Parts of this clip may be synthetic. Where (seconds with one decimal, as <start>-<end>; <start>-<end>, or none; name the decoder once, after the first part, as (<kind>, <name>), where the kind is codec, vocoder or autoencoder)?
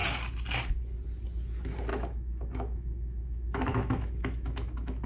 1.9-5.1 (autoencoder, DAC-VAE)